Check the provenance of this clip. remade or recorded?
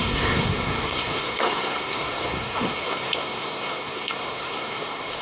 remade